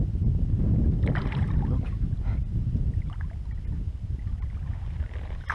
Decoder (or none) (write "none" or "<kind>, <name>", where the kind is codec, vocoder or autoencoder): none